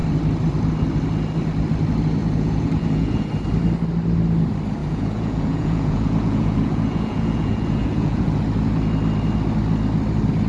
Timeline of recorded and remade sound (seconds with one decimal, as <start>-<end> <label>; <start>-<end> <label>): 0.0-2.2 recorded; 2.2-3.3 remade; 3.3-4.8 recorded; 4.8-8.4 remade; 8.4-10.5 recorded